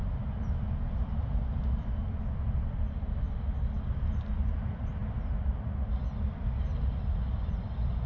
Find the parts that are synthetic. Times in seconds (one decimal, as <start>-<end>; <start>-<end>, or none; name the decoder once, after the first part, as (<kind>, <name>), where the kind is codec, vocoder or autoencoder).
0.0-1.7 (vocoder, BigVGAN v2)